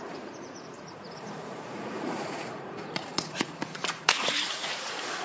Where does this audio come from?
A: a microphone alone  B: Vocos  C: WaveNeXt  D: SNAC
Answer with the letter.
B